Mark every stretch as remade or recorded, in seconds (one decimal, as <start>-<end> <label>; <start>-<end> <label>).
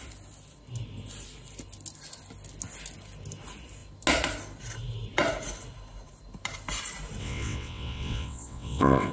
0.0-7.2 recorded; 7.2-9.1 remade